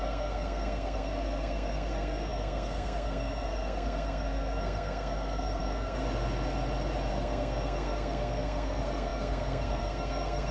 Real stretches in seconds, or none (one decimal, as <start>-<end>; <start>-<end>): 6.0-7.1